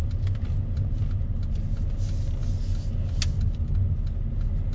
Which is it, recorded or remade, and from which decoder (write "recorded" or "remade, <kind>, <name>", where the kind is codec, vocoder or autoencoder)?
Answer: recorded